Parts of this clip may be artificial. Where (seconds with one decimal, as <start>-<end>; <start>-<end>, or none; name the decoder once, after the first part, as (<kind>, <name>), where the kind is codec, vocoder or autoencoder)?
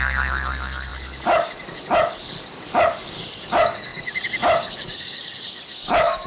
0.0-6.3 (codec, DAC)